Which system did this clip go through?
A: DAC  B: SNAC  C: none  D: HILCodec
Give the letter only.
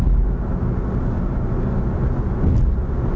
C